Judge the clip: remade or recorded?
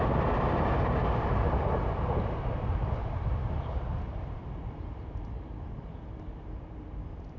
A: remade